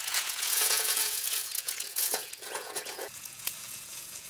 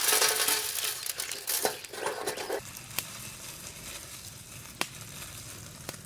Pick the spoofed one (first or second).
first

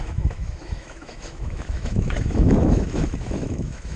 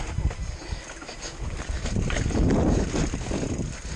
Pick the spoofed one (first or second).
first